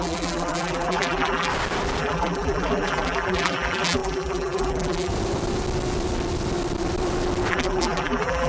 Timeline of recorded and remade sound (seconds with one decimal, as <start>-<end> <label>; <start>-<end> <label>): 0.0-1.5 remade; 1.5-2.0 recorded; 2.0-5.1 remade; 5.1-7.5 recorded; 7.5-8.5 remade